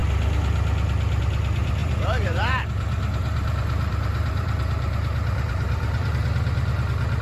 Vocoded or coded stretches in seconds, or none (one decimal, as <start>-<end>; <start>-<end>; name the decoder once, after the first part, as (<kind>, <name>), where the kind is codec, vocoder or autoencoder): 1.8-6.1 (vocoder, BigVGAN v2)